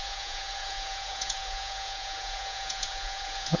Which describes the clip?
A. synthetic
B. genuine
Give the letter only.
A